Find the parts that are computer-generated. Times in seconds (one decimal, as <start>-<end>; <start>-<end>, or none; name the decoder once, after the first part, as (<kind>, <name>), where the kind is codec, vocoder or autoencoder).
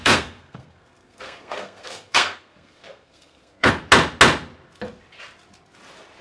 0.0-3.7 (codec, SNAC)